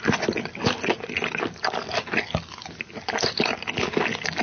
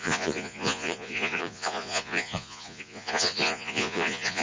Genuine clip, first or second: first